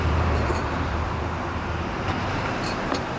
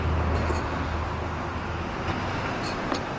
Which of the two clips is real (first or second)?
second